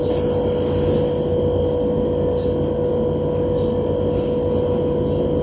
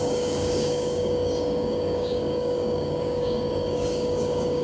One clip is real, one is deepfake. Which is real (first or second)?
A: first